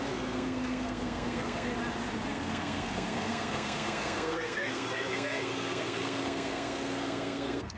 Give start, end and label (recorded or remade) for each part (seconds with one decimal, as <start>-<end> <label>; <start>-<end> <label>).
0.0-1.7 remade; 1.7-2.3 recorded; 2.3-7.8 remade